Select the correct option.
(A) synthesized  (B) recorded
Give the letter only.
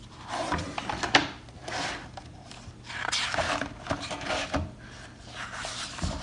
A